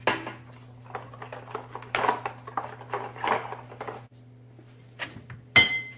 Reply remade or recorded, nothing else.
recorded